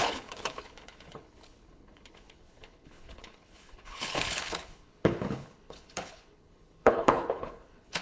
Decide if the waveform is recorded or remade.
remade